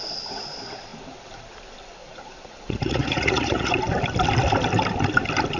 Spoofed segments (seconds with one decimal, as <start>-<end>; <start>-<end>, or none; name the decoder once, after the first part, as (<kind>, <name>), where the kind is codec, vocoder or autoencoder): 2.0-3.7 (vocoder, Vocos)